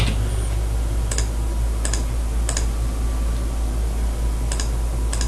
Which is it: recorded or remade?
recorded